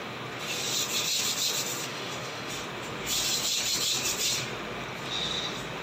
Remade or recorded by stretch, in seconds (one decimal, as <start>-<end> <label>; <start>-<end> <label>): 0.0-1.8 recorded; 1.8-2.5 remade; 2.5-5.8 recorded